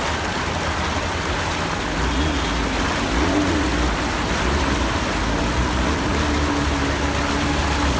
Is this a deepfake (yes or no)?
no